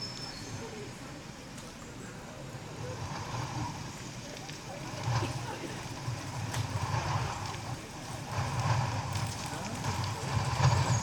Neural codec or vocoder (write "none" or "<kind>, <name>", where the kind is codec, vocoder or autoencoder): vocoder, BigVGAN v2